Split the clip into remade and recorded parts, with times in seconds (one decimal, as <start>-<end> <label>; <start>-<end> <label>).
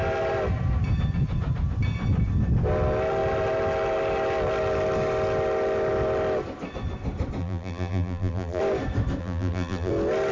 0.0-7.4 recorded; 7.4-8.6 remade; 8.6-9.2 recorded; 9.2-9.9 remade; 9.9-10.3 recorded